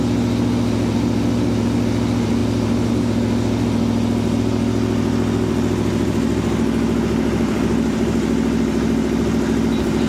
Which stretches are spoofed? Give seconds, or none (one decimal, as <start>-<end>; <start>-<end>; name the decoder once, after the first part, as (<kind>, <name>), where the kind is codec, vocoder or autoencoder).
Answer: none